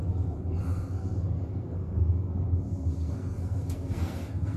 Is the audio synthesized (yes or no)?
yes